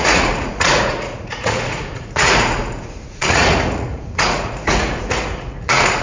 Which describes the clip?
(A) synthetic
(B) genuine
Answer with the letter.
A